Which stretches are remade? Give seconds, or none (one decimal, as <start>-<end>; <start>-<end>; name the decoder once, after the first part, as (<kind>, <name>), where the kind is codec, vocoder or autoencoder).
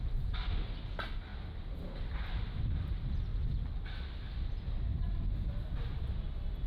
none